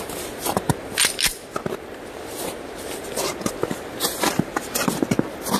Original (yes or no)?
yes